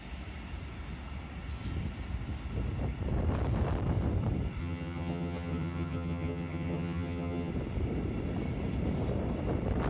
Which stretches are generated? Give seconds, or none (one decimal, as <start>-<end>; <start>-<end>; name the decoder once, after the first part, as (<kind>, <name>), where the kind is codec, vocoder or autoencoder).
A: 4.6-7.5 (vocoder, HiFi-GAN)